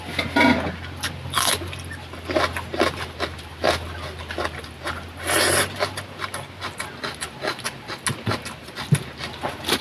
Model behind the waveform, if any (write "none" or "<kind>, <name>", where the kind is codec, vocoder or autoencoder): none